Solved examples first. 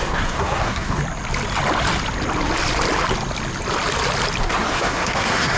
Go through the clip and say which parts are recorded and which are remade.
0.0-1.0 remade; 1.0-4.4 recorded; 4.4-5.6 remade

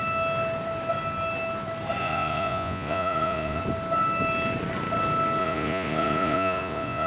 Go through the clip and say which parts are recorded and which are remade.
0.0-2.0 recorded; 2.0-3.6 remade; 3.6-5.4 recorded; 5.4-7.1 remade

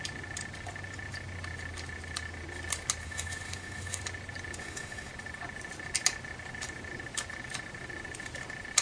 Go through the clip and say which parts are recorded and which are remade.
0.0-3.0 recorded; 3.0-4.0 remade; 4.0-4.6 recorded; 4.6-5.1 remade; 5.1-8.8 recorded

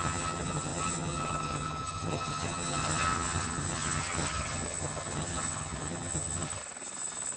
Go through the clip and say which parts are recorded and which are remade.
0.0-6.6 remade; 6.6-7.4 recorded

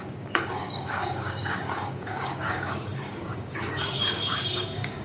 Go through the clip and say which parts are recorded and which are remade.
0.0-5.0 remade